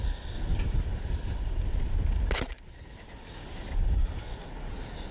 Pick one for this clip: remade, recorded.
recorded